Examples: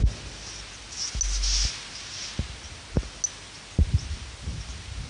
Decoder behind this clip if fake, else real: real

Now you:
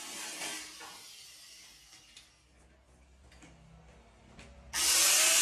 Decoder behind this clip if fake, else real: real